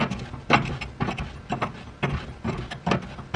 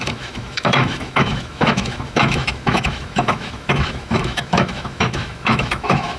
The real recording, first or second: first